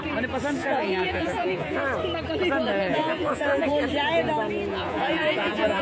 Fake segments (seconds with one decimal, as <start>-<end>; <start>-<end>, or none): 0.6-1.8; 2.8-3.7; 4.7-5.8